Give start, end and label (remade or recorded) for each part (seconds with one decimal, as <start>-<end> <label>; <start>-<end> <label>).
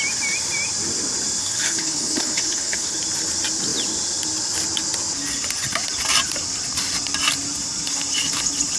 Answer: 0.0-1.4 recorded; 1.4-3.0 remade; 3.0-8.8 recorded